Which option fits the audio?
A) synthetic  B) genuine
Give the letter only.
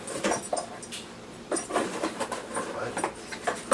A